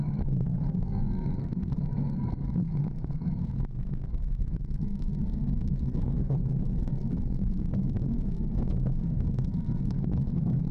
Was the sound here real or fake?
fake